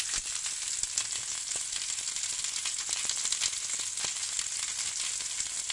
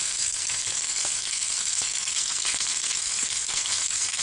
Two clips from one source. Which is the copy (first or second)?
second